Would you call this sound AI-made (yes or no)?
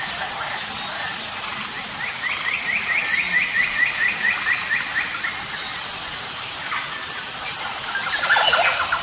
no